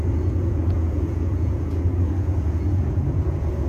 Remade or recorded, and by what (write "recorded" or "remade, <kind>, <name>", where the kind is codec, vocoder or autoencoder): remade, vocoder, Vocos